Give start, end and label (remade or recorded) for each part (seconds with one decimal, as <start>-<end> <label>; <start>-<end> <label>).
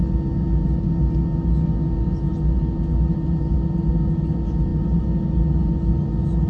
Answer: 0.0-6.5 recorded